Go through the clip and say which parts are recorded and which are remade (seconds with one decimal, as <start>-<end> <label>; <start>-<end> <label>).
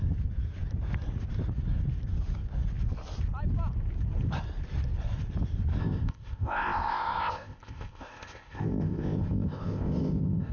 0.0-5.8 recorded; 5.8-10.5 remade